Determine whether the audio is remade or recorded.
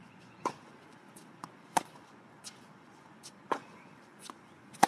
remade